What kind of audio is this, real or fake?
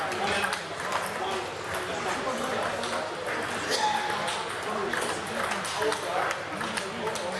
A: real